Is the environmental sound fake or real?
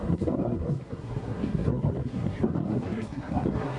fake